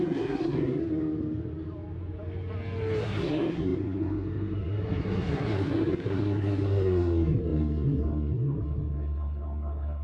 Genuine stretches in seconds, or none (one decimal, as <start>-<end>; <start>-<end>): 0.8-3.0